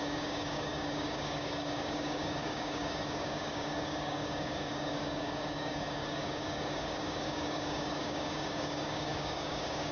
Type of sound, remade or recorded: remade